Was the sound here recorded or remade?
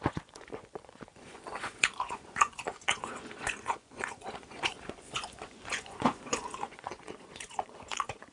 remade